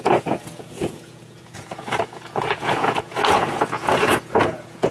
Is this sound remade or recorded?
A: remade